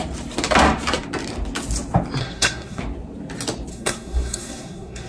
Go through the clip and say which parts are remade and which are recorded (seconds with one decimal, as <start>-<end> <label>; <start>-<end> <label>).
0.0-2.2 recorded; 2.2-2.8 remade; 2.8-3.7 recorded; 3.7-5.1 remade